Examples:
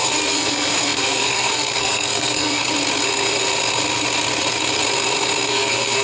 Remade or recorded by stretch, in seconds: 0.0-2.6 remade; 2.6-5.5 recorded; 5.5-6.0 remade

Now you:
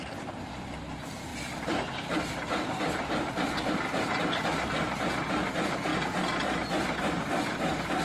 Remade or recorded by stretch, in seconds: 0.0-8.0 recorded

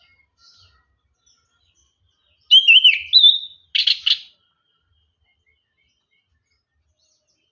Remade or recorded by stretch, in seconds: 0.0-7.5 recorded

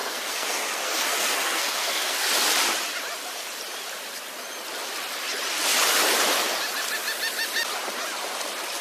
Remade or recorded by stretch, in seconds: 0.0-2.3 remade; 2.3-8.8 recorded

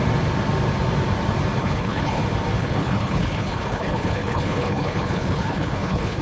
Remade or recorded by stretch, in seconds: 0.0-1.6 recorded; 1.6-2.2 remade; 2.2-2.6 recorded; 2.6-6.2 remade

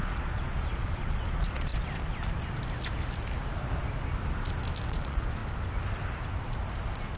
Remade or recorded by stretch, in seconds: 0.0-1.7 remade; 1.7-4.9 recorded; 4.9-5.4 remade; 5.4-7.2 recorded

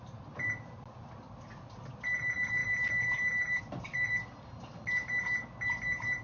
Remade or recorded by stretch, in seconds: 0.0-2.6 recorded; 2.6-3.6 remade; 3.6-6.2 recorded